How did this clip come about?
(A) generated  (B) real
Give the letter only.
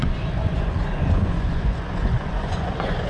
A